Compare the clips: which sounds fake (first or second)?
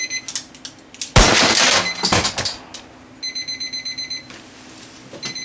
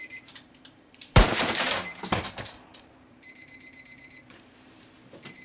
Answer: second